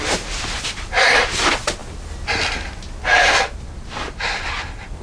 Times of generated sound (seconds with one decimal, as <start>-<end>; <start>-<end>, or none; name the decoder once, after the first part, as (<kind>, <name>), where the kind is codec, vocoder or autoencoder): none